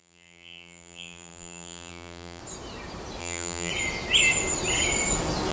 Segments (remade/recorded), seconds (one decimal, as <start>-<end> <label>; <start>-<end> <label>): 0.0-2.4 remade; 2.4-3.2 recorded; 3.2-3.7 remade; 3.7-5.5 recorded